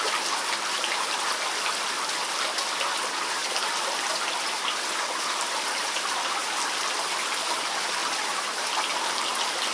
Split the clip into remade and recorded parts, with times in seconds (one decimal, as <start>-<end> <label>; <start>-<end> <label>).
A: 0.0-9.7 recorded